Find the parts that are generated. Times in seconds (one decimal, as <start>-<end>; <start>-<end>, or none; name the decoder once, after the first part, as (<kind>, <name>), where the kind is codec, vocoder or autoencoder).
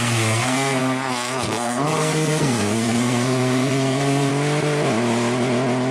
0.0-4.3 (codec, SNAC)